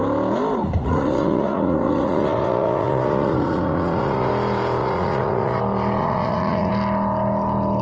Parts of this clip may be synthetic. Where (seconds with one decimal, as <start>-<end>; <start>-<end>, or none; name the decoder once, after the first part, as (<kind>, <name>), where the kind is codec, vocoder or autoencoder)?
0.6-4.3 (vocoder, Vocos); 4.8-5.6; 6.0-6.7